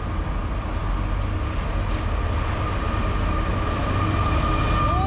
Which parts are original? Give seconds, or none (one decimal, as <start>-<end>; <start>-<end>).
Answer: 0.0-5.1